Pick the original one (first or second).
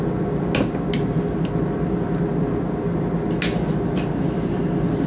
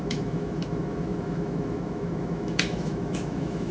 first